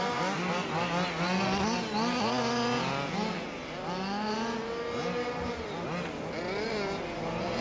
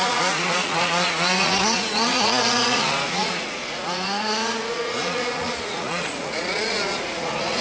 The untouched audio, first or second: first